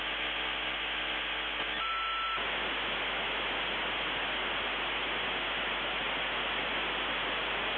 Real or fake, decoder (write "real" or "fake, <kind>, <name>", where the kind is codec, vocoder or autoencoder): real